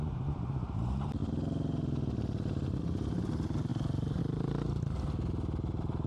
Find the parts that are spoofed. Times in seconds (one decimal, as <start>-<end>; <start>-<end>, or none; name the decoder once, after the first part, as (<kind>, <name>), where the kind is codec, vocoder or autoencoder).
1.2-2.8 (vocoder, BigVGAN v2)